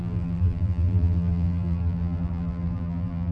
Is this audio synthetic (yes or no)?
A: yes